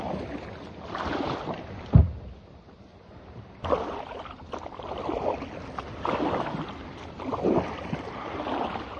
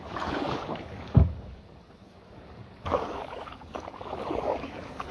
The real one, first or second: first